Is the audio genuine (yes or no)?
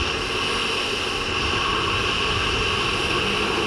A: yes